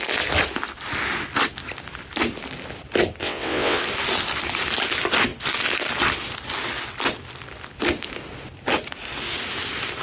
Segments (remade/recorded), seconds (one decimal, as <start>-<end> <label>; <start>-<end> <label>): 0.0-3.2 recorded; 3.2-3.8 remade; 3.8-10.0 recorded